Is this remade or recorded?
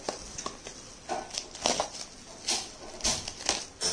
recorded